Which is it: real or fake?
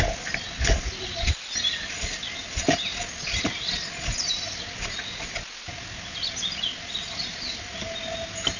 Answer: real